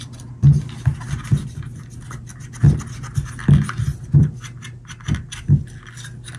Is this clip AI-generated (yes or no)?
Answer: no